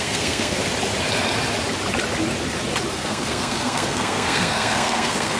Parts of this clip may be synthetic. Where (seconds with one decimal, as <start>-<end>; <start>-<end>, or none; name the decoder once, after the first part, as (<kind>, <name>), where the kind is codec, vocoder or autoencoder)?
0.0-0.6 (codec, SNAC); 2.9-5.4